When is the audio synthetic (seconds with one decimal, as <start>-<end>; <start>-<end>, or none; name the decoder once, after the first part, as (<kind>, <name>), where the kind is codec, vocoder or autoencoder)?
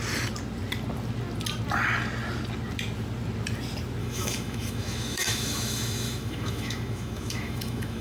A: 4.0-8.0 (autoencoder, DAC-VAE)